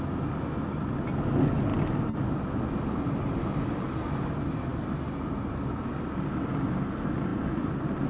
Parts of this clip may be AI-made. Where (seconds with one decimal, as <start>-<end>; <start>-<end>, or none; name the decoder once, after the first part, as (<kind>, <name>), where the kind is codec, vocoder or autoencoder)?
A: none